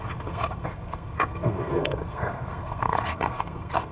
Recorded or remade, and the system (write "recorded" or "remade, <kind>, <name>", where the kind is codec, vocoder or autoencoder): remade, codec, SNAC